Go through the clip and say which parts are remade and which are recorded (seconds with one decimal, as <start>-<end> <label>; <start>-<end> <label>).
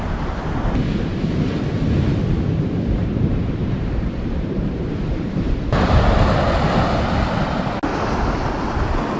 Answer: 0.0-3.0 recorded; 3.0-5.6 remade; 5.6-9.2 recorded